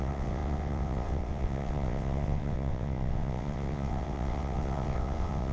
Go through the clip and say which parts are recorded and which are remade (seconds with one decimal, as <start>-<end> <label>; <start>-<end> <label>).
0.0-5.5 remade